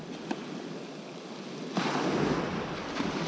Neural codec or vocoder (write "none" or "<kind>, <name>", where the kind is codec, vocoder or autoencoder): none